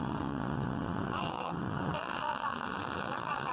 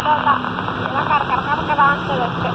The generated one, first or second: first